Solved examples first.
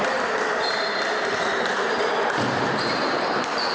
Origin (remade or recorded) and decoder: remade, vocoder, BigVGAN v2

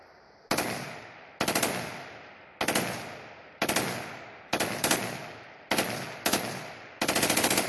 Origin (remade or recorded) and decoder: recorded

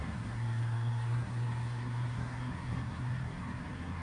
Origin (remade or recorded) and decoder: remade, codec, SNAC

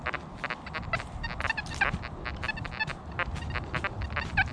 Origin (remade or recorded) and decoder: recorded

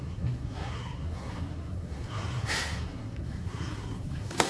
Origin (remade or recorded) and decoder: remade, codec, SNAC